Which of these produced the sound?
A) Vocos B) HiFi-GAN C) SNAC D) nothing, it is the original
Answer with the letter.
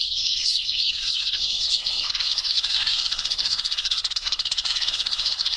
C